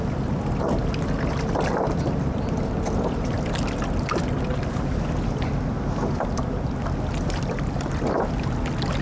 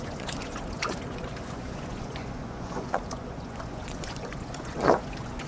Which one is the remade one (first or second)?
second